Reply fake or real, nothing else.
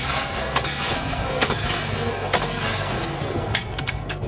fake